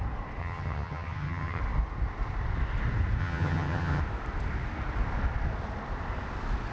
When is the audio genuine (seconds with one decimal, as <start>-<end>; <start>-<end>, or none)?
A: 0.0-0.4; 1.6-3.2; 4.0-6.7